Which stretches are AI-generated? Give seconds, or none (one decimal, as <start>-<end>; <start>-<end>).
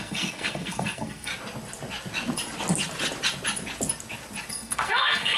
0.0-1.3; 4.5-5.4